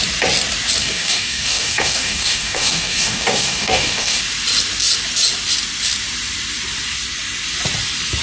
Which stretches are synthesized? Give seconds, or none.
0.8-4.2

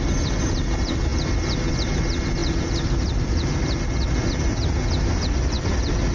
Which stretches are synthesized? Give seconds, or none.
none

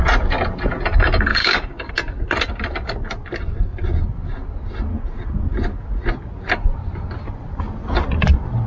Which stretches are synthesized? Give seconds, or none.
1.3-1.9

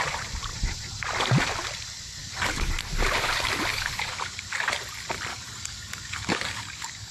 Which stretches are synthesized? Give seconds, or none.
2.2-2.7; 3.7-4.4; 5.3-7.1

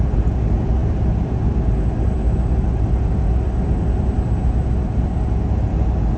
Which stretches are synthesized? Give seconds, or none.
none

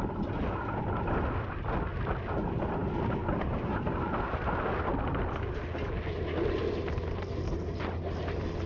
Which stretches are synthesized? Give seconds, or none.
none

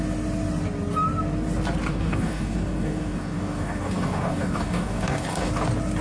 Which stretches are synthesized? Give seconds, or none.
1.9-5.5

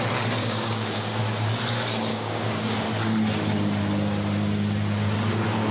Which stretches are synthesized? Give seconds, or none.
0.4-1.2; 2.1-2.7